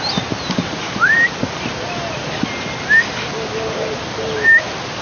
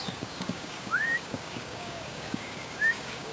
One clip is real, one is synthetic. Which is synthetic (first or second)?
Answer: second